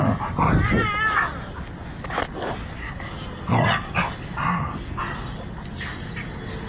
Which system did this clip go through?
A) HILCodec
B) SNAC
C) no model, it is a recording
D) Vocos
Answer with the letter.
C